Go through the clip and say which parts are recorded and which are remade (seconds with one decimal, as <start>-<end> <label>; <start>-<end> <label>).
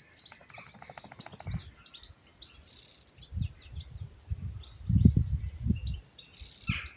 0.0-7.0 recorded